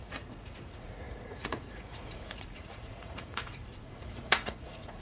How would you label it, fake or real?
fake